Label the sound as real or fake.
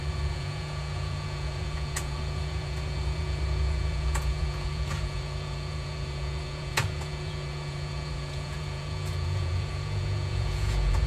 fake